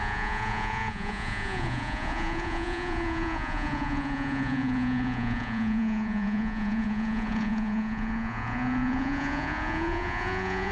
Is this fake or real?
fake